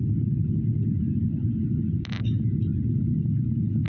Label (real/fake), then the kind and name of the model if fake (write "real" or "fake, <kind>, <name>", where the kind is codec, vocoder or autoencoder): real